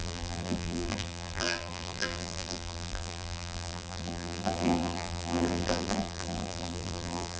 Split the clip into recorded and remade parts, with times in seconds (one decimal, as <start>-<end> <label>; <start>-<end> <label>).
0.0-7.4 remade